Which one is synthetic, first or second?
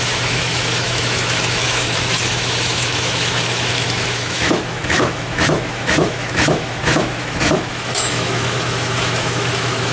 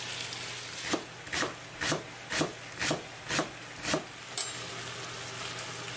first